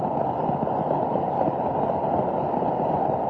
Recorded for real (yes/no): yes